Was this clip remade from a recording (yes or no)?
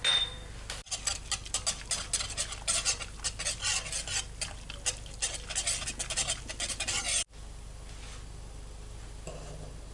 no